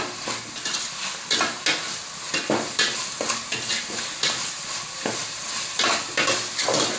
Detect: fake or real real